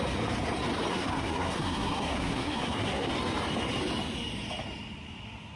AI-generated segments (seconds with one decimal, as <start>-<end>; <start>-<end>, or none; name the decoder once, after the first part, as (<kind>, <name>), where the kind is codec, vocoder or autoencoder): 0.9-3.1 (codec, SNAC)